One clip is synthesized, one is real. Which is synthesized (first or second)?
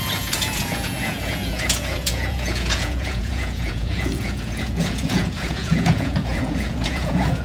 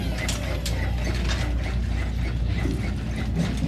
first